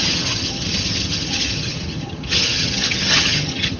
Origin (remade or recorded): remade